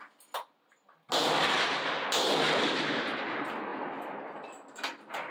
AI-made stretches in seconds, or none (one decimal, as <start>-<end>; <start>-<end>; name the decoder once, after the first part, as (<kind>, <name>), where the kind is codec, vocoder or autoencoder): none